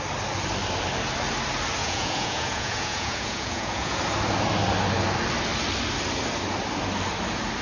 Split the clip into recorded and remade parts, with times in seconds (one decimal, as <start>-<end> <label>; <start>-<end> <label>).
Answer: 0.0-1.8 recorded; 1.8-4.0 remade; 4.0-7.6 recorded